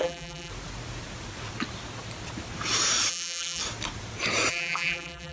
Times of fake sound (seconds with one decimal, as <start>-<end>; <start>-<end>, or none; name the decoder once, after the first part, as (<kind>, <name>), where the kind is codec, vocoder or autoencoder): 0.0-0.5 (vocoder, BigVGAN v2); 3.1-3.6; 4.5-5.3